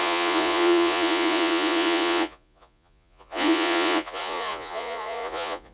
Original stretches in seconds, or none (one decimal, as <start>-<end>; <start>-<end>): none